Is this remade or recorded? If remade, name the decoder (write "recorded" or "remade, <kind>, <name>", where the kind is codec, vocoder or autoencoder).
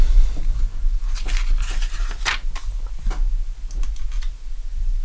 recorded